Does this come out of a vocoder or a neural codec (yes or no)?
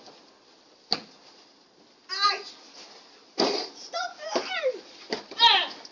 no